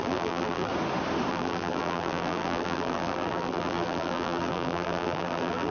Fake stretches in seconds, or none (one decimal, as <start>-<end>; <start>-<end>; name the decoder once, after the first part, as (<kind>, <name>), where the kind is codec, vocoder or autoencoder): 0.0-0.7 (vocoder, BigVGAN v2); 1.3-5.7